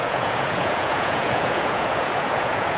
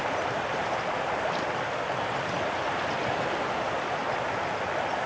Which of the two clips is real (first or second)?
second